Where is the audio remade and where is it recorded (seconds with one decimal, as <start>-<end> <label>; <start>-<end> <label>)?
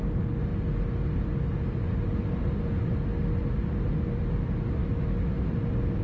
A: 0.0-4.8 recorded; 4.8-5.4 remade; 5.4-6.0 recorded